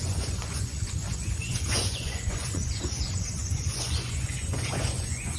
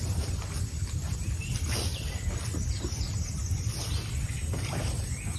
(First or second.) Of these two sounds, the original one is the second